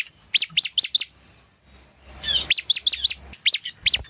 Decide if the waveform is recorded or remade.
recorded